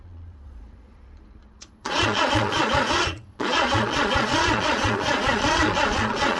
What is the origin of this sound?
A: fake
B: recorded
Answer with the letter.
A